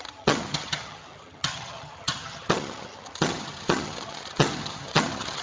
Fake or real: fake